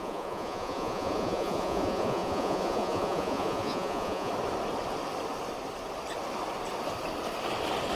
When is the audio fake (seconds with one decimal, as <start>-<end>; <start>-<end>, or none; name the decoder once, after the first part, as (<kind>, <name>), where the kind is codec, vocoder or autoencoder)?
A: 0.0-4.3 (vocoder, Vocos)